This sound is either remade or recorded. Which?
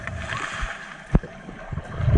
remade